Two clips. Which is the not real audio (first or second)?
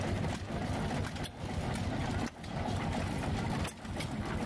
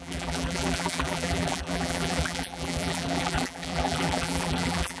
second